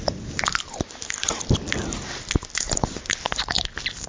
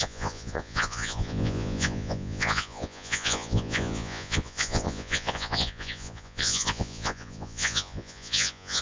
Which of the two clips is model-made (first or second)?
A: second